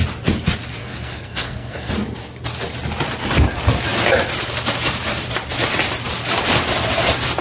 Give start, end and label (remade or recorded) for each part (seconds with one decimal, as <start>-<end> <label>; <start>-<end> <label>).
0.0-0.8 recorded; 0.8-1.9 remade; 1.9-7.4 recorded